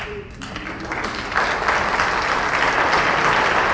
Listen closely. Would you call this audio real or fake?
real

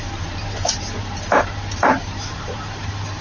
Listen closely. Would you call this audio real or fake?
real